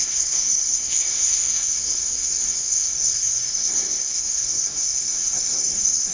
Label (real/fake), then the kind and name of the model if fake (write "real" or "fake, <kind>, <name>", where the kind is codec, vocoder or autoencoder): fake, codec, SNAC